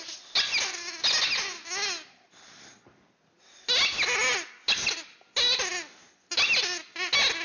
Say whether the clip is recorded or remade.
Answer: recorded